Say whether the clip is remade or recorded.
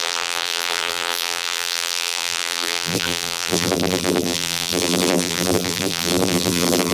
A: remade